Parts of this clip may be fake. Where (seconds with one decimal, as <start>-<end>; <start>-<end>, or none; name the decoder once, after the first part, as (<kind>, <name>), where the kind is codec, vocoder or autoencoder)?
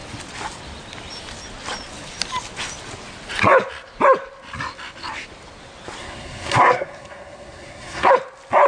6.0-8.1 (codec, SNAC)